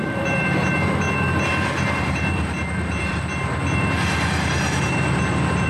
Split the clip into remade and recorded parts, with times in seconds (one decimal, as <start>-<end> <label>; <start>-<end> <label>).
0.0-5.7 remade

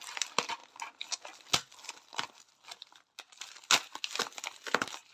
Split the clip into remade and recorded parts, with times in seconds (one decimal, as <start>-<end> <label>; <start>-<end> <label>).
0.0-5.1 recorded

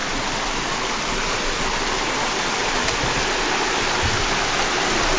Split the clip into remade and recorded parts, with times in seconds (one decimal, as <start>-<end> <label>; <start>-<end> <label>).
0.0-5.2 recorded

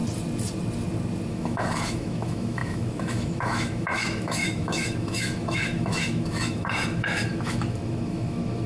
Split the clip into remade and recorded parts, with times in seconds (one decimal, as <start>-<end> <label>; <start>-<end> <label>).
0.0-1.3 recorded; 1.3-8.7 remade

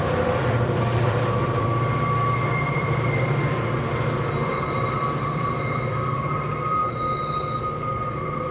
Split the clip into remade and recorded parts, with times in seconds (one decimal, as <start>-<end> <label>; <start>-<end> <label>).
0.0-6.8 remade; 6.8-8.1 recorded; 8.1-8.5 remade